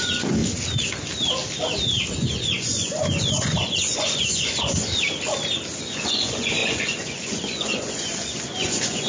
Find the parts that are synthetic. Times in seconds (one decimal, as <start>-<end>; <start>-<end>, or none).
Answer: 0.0-0.4; 2.1-4.9; 5.8-9.1